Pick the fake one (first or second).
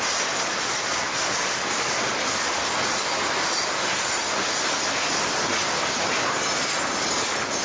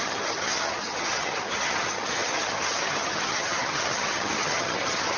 second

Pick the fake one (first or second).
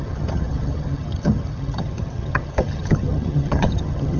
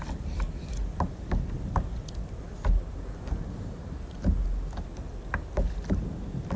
first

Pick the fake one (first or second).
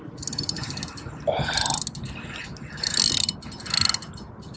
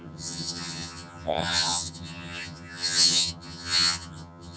second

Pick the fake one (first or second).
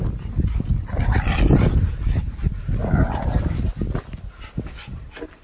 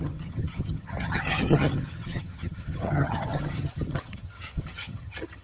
second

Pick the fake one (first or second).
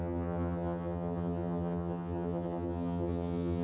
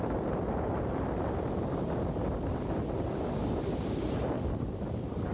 first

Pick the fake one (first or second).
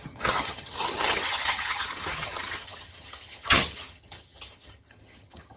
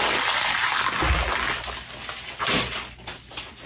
first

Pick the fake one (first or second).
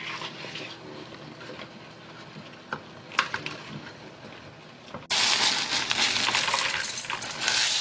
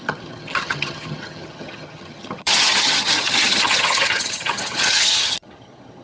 second